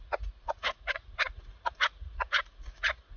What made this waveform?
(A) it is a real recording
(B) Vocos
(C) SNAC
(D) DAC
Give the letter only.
B